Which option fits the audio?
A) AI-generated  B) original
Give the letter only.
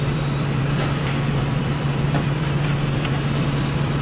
A